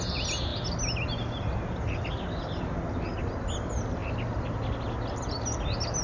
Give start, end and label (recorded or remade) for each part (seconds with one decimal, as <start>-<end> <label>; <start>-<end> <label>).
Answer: 0.0-6.0 recorded